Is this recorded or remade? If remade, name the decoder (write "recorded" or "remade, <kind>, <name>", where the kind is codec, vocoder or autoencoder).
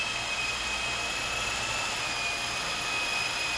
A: recorded